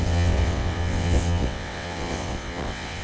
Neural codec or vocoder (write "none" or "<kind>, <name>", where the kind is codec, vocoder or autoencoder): vocoder, WaveNeXt